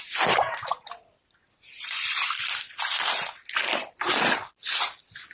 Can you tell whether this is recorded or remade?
recorded